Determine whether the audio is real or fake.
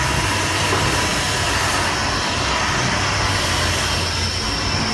real